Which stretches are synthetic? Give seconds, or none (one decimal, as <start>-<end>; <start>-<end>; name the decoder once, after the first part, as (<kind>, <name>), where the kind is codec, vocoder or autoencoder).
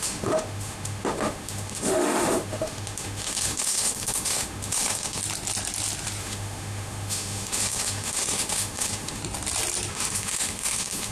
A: 0.0-5.2 (autoencoder, DAC-VAE); 6.2-9.2; 9.9-11.1